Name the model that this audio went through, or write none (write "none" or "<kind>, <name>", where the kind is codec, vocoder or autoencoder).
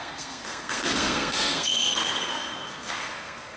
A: codec, SNAC